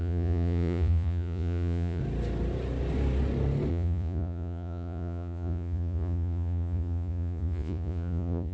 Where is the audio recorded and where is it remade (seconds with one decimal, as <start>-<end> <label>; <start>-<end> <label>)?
0.0-2.0 remade; 2.0-3.7 recorded; 3.7-8.5 remade